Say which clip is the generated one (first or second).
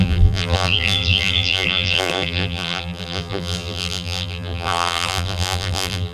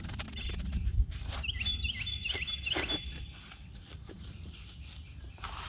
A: first